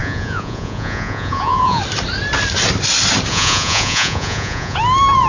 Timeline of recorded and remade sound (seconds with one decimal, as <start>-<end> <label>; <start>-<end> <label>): 0.0-1.8 remade; 1.8-3.3 recorded; 3.3-4.8 remade; 4.8-5.3 recorded